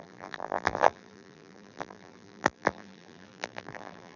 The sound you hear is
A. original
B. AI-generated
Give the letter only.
B